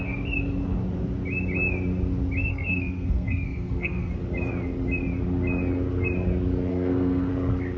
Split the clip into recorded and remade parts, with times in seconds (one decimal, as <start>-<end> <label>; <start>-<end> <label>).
0.0-2.5 recorded; 2.5-4.1 remade; 4.1-6.7 recorded; 6.7-7.3 remade; 7.3-7.8 recorded